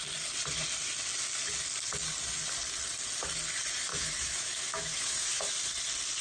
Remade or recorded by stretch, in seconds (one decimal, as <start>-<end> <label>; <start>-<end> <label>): 0.0-3.9 recorded; 3.9-5.5 remade; 5.5-6.2 recorded

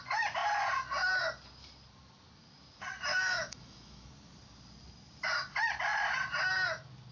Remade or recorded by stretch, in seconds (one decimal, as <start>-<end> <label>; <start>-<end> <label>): 0.0-3.1 recorded; 3.1-4.1 remade; 4.1-7.1 recorded

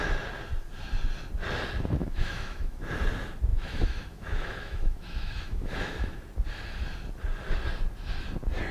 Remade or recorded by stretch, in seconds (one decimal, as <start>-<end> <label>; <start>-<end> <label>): 0.0-2.0 recorded; 2.0-2.8 remade; 2.8-3.5 recorded; 3.5-6.2 remade; 6.2-8.7 recorded

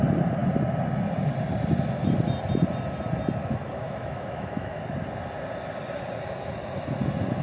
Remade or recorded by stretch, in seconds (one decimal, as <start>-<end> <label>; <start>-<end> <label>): 0.0-3.4 recorded; 3.4-4.8 remade; 4.8-7.4 recorded